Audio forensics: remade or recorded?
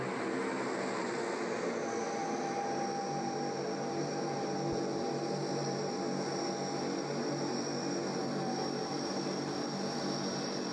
recorded